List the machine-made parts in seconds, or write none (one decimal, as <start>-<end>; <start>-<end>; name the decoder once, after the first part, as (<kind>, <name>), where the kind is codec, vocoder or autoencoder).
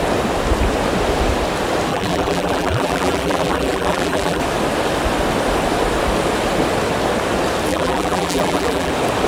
1.9-4.4 (vocoder, BigVGAN v2); 7.7-8.9